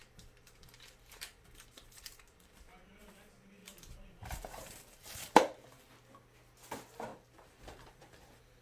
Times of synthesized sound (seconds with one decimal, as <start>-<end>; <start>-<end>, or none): 0.0-2.7; 3.6-5.9; 7.1-7.6